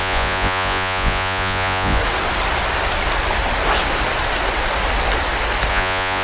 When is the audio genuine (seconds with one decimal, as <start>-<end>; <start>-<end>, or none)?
2.0-5.7